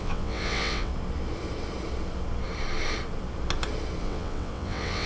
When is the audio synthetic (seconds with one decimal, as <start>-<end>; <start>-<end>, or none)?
0.0-0.9; 4.0-5.1